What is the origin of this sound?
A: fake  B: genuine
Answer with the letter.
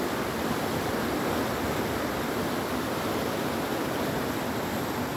B